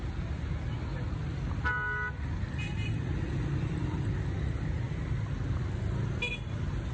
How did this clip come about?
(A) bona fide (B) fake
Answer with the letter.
A